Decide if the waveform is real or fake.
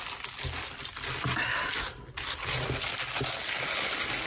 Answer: real